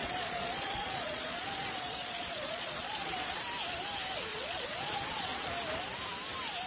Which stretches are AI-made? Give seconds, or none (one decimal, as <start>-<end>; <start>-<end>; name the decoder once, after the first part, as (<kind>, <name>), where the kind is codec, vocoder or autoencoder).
0.0-3.4 (vocoder, Vocos); 4.3-5.5